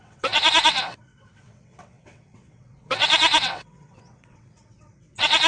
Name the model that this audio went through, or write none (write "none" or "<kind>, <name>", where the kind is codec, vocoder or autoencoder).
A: vocoder, WaveNeXt